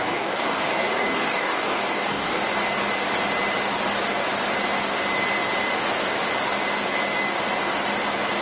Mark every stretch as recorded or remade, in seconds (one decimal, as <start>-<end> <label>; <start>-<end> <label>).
0.0-2.4 remade; 2.4-8.4 recorded